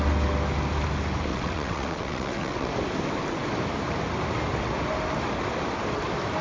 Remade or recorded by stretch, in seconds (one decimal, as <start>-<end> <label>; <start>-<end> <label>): 0.0-1.3 recorded; 1.3-2.7 remade; 2.7-6.4 recorded